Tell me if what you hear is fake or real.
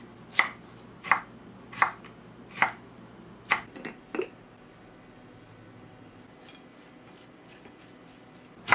real